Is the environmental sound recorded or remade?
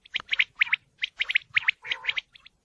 recorded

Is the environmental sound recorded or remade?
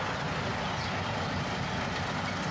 recorded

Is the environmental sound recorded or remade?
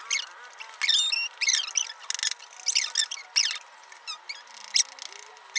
recorded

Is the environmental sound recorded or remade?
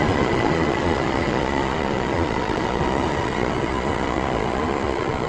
remade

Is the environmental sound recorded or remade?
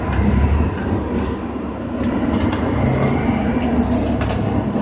recorded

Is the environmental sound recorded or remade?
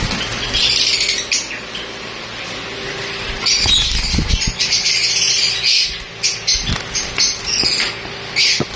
recorded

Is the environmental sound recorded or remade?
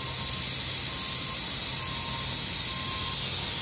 recorded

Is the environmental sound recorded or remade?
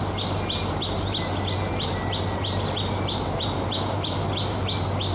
recorded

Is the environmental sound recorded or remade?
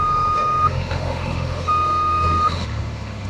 remade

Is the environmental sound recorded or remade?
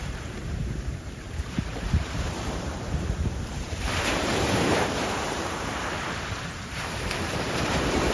remade